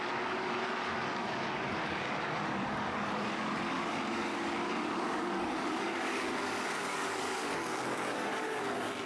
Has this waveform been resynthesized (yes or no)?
yes